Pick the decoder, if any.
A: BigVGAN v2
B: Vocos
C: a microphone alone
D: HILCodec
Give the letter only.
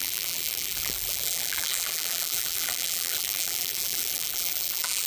A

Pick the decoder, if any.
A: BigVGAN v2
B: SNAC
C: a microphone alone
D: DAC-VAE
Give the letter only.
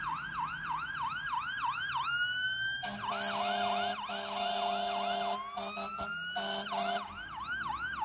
C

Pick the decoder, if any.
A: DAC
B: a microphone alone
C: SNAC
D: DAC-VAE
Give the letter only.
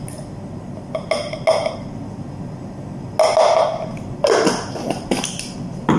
B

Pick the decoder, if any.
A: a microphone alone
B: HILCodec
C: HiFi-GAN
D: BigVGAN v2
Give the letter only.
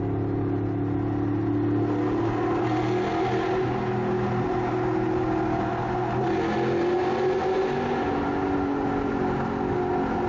A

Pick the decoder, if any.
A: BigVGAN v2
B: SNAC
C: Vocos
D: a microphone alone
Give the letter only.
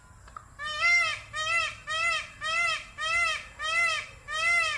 D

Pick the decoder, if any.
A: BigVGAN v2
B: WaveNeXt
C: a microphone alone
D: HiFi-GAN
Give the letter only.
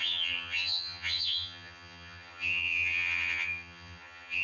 D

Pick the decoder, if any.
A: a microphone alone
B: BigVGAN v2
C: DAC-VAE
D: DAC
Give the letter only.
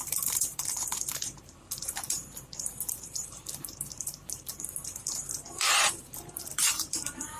B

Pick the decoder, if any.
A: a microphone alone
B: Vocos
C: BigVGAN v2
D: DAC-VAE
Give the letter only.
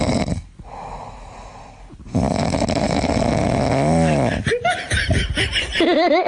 A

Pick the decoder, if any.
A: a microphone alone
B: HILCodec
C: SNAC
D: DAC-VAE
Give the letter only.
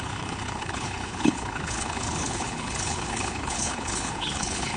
B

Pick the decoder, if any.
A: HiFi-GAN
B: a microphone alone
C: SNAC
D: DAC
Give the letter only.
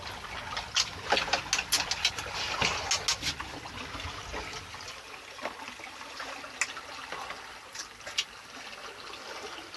B